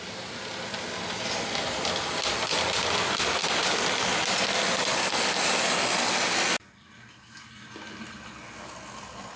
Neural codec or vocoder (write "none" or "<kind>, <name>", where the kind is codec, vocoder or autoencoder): none